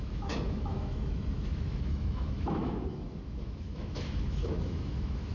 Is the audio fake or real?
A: fake